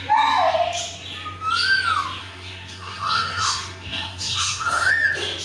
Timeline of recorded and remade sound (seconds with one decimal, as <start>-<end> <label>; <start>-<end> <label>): 0.0-2.2 recorded; 2.2-4.9 remade; 4.9-5.4 recorded